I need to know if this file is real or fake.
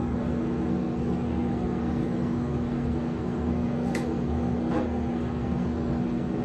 fake